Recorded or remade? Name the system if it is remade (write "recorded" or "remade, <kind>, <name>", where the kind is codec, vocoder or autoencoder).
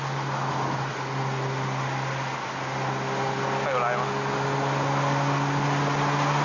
recorded